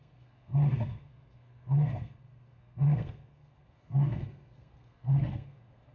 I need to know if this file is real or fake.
fake